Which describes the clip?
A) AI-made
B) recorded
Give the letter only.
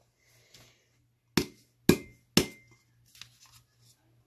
B